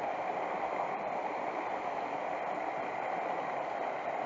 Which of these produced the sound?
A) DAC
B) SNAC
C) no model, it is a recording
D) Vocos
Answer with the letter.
C